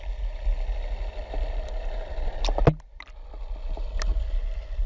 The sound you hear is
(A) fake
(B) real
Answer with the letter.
B